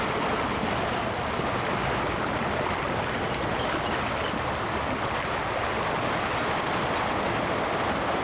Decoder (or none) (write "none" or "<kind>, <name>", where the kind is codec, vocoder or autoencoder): none